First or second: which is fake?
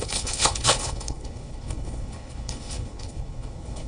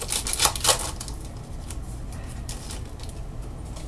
first